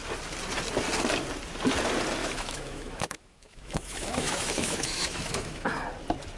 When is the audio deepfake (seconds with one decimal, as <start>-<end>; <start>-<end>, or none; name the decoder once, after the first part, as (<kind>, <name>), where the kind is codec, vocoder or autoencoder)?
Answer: 2.2-5.7 (autoencoder, DAC-VAE)